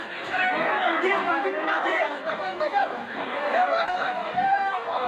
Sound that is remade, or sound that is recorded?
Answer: remade